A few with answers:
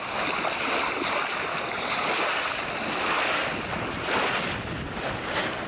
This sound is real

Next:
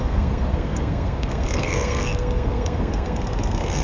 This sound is fake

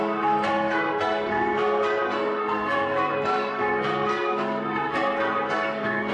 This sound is fake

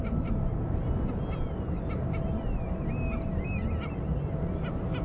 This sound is real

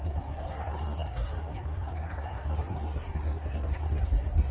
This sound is fake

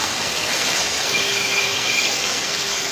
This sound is fake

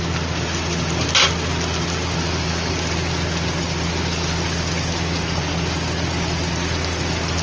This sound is real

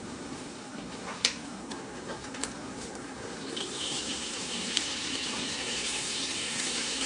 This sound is fake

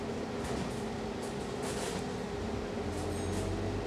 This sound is real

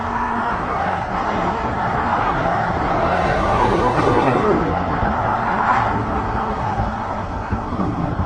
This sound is fake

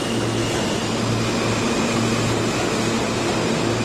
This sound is real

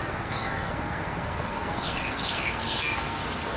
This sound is fake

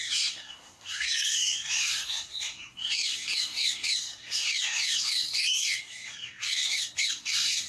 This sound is fake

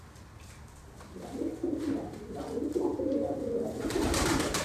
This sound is real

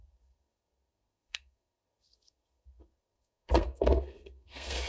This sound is fake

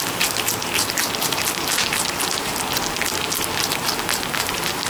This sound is real